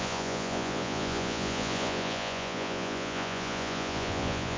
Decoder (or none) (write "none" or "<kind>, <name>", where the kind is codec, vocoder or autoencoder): vocoder, Vocos